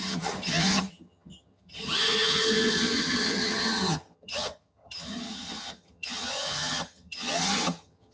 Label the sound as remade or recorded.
remade